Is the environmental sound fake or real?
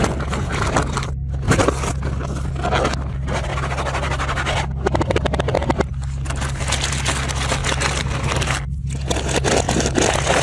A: real